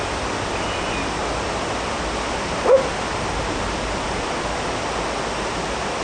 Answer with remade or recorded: recorded